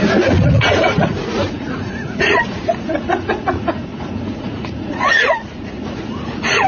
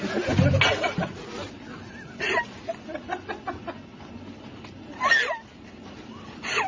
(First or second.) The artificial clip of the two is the first